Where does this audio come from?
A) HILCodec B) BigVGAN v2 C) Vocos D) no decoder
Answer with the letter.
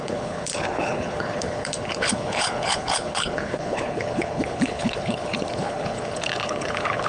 A